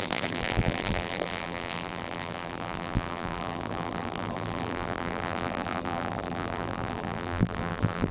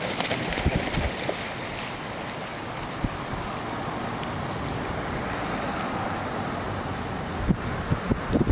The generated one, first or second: first